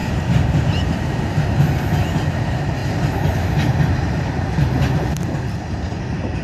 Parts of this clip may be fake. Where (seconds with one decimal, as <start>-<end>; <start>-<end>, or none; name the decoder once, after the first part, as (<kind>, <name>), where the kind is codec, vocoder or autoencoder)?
0.0-0.6 (vocoder, BigVGAN v2)